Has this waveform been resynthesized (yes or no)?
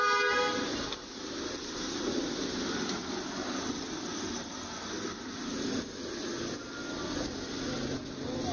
no